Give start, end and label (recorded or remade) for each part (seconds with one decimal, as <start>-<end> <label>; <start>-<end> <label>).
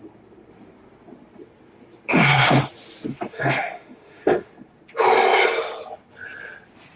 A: 0.0-2.1 recorded; 2.1-2.6 remade; 2.6-3.3 recorded; 3.3-4.5 remade; 4.5-7.0 recorded